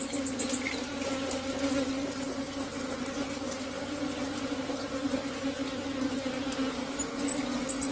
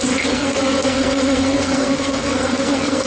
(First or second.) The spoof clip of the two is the second